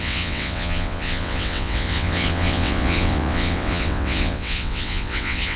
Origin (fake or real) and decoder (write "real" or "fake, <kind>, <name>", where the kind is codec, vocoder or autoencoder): fake, vocoder, WaveNeXt